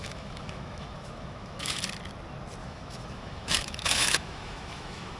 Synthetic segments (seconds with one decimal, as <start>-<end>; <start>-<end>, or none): 0.0-1.8; 2.6-5.2